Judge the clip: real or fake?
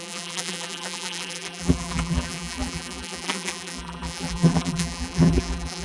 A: fake